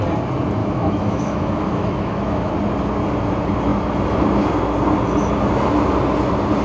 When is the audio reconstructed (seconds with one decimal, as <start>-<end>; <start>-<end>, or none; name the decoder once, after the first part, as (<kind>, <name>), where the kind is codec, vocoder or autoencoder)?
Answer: 0.6-2.5 (autoencoder, DAC-VAE)